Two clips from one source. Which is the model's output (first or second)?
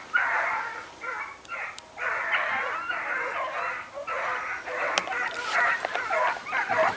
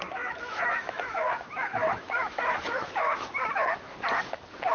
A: second